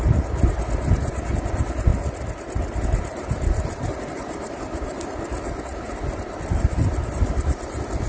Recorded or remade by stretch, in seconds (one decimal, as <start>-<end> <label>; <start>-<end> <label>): 0.0-8.1 recorded